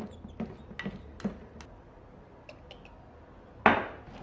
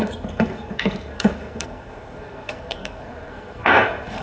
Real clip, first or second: first